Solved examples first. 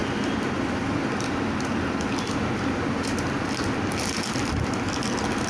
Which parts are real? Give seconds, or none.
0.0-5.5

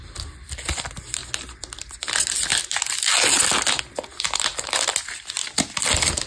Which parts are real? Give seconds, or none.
1.2-5.0; 5.4-6.3

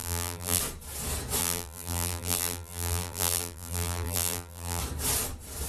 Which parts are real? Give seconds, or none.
0.6-1.4; 4.8-5.7

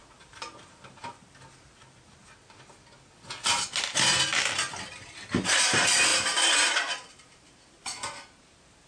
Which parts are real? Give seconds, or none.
2.2-4.8

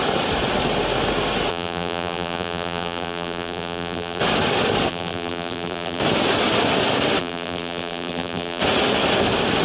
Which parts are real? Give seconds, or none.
0.0-1.5; 4.2-4.9; 6.0-7.2; 8.6-9.6

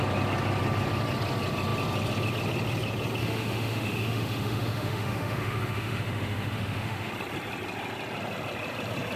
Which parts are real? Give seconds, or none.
0.0-3.2; 7.1-9.2

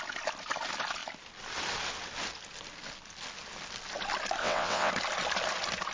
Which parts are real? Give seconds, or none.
0.0-4.4; 4.9-5.9

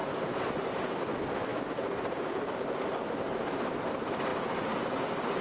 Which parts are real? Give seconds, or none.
0.9-1.5; 2.3-4.3